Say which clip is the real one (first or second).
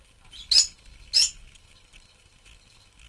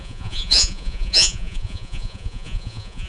first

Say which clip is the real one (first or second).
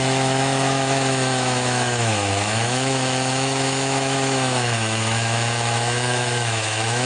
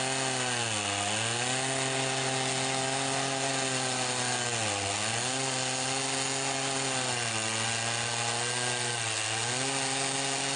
second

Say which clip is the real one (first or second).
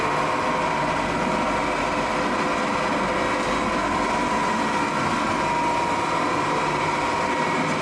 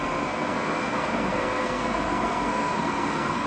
first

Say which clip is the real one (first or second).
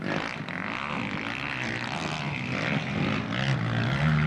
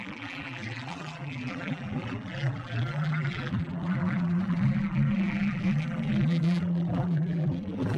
first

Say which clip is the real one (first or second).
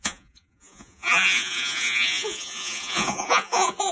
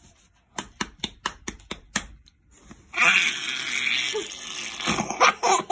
second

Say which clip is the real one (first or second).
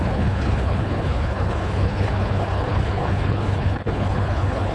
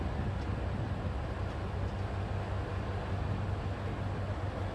second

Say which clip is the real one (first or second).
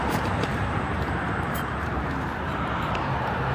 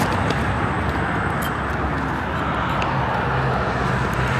second